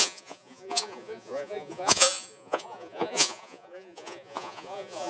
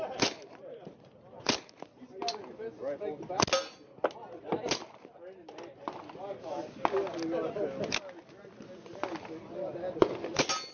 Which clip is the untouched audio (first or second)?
second